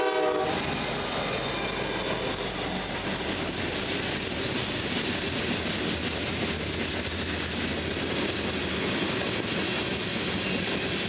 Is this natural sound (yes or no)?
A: yes